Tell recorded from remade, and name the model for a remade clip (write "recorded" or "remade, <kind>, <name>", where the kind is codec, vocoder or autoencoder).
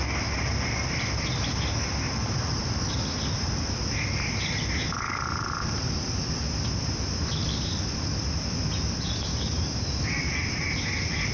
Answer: recorded